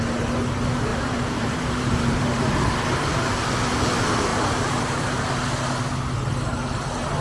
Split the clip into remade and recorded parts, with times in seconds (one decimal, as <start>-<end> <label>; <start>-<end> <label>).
0.0-0.9 recorded; 0.9-2.4 remade; 2.4-4.3 recorded; 4.3-5.3 remade; 5.3-7.2 recorded